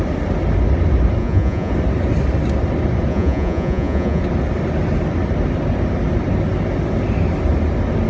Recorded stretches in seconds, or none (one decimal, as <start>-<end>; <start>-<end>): 0.0-1.2; 1.7-3.1; 4.2-8.1